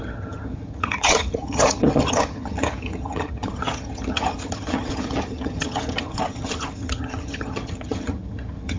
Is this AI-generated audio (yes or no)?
yes